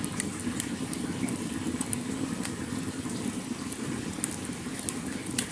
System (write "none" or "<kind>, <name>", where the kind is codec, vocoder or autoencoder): none